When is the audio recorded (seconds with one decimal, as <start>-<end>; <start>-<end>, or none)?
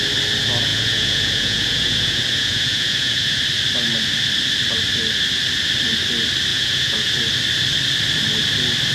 0.0-0.7; 3.4-6.5; 7.2-8.9